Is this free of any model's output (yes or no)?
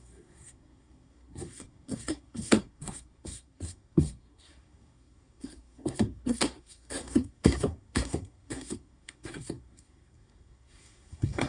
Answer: no